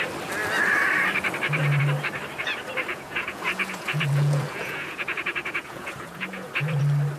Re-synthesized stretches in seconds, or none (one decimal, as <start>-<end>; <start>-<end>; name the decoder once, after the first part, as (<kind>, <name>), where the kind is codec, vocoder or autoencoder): 2.9-6.8 (vocoder, Vocos)